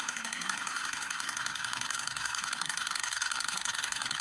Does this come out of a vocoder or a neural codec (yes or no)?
yes